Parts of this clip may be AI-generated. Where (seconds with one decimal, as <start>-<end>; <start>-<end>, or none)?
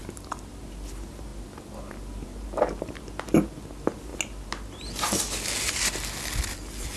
none